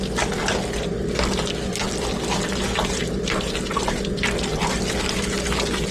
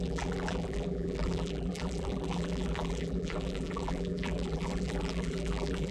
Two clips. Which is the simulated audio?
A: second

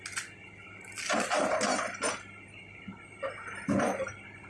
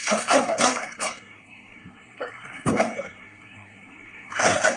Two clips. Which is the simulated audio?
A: second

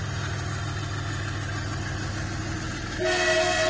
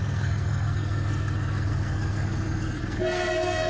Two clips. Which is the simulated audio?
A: second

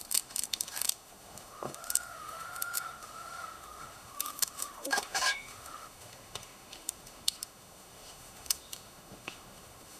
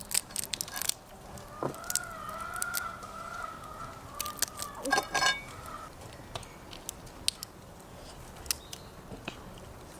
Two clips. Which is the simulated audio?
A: first